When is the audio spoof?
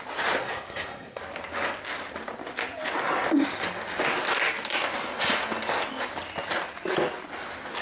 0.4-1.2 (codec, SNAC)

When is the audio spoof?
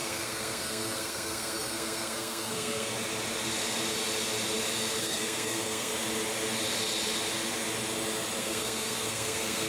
0.0-2.9 (codec, SNAC); 5.0-5.9; 8.4-9.7